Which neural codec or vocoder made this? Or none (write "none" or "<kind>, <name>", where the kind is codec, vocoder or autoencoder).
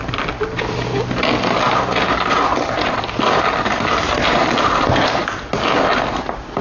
none